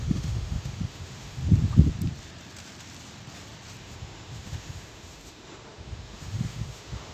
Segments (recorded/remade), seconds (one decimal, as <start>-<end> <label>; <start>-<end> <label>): 0.0-1.4 remade; 1.4-3.8 recorded; 3.8-7.1 remade